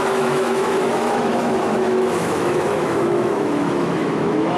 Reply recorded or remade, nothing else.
remade